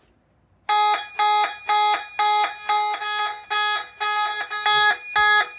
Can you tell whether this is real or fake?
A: real